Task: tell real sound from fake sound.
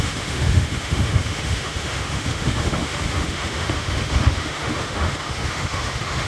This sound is fake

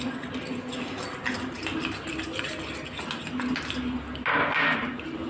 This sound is real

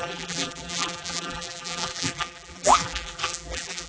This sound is fake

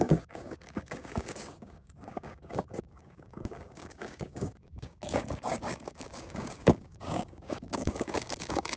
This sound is fake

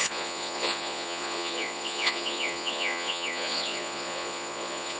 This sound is fake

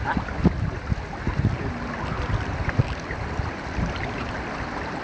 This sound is real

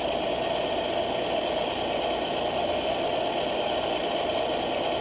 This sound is real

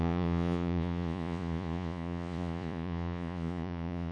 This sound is fake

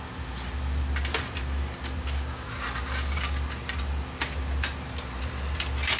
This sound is real